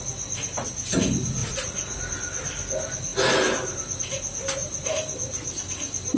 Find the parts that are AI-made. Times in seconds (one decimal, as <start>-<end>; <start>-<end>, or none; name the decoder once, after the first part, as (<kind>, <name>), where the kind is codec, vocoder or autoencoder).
1.4-2.0 (vocoder, Vocos)